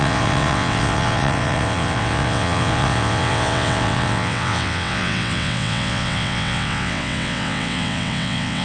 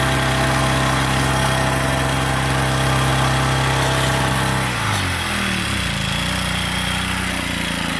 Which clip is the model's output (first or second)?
first